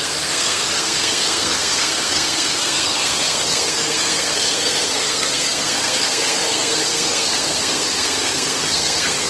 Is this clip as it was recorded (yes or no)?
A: no